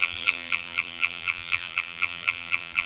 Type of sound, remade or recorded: remade